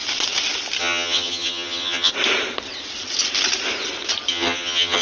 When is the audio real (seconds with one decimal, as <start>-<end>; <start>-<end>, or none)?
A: 0.0-0.8; 2.1-4.3